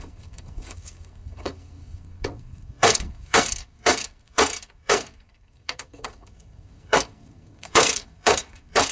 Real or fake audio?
fake